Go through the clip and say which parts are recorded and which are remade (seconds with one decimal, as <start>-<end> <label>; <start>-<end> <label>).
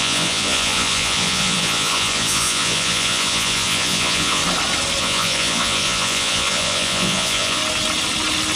0.0-4.4 remade; 4.4-5.0 recorded; 5.0-7.6 remade; 7.6-8.6 recorded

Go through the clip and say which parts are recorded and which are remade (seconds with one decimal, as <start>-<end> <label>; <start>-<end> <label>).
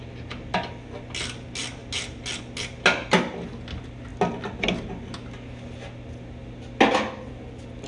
0.0-7.9 recorded